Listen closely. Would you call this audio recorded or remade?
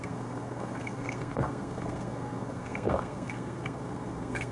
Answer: remade